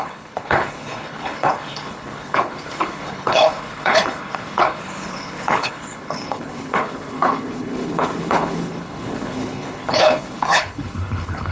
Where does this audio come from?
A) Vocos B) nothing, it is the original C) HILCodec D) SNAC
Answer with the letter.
C